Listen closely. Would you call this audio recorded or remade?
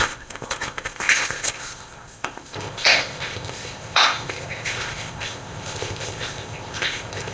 remade